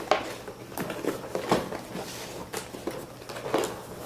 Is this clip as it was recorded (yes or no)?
yes